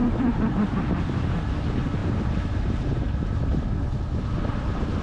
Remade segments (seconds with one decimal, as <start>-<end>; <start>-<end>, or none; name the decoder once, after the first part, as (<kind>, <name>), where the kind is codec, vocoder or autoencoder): 0.0-0.8 (vocoder, BigVGAN v2); 2.0-3.6